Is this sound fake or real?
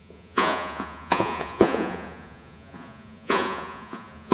fake